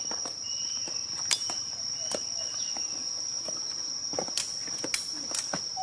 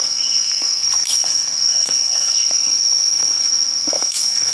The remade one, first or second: second